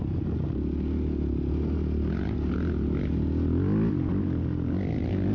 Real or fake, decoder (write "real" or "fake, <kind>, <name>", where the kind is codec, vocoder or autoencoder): real